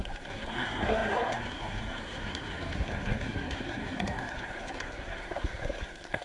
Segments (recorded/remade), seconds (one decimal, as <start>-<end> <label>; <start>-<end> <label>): 0.0-6.2 remade